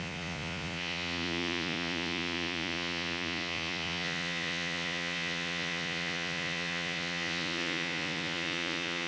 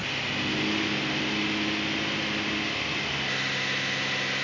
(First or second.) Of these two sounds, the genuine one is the second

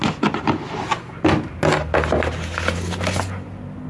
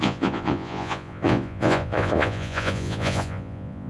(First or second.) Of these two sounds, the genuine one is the first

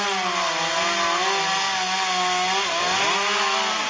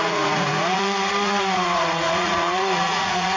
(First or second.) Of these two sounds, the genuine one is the first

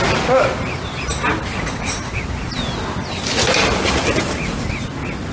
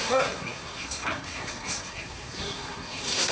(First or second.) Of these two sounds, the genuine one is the first